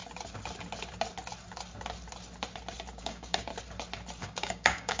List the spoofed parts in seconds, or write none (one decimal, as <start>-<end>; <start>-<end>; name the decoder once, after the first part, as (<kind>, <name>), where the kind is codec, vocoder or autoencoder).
3.0-3.5 (codec, DAC); 4.2-5.0